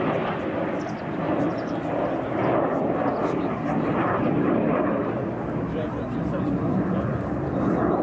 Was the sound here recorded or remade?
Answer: recorded